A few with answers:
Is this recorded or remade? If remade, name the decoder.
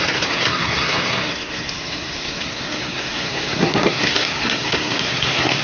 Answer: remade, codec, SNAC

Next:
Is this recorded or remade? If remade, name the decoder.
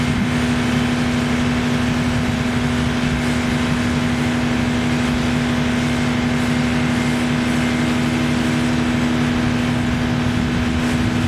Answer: recorded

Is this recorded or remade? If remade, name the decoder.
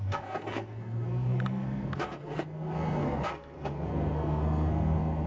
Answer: remade, codec, SNAC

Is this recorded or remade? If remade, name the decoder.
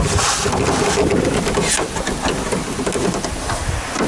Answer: recorded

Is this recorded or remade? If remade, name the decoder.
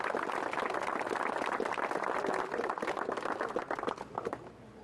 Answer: recorded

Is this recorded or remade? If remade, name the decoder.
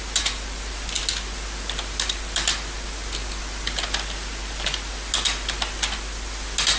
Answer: recorded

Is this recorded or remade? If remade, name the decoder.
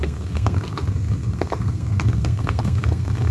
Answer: remade, codec, SNAC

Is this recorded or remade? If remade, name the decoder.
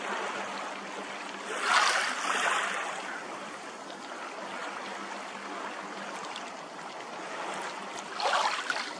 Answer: recorded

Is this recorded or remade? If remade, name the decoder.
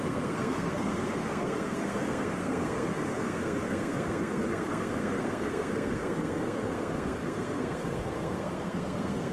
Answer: remade, codec, SNAC